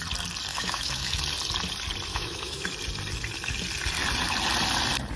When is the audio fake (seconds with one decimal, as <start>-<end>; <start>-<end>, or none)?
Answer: 0.5-1.2; 2.1-2.7